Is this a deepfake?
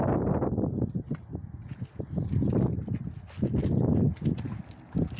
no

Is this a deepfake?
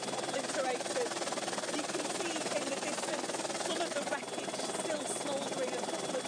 no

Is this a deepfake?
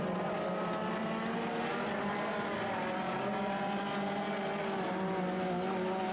no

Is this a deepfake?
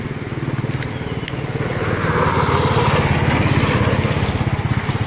no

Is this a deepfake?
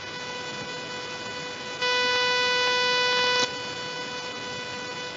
no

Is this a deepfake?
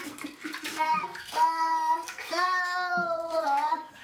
yes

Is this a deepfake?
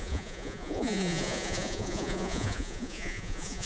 yes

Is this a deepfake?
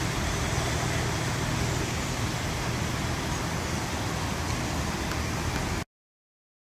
no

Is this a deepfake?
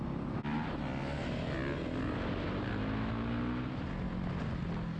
no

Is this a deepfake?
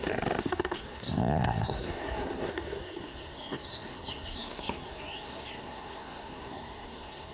yes